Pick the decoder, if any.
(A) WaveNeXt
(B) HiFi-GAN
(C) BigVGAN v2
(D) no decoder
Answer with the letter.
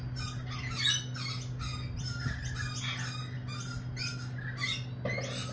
D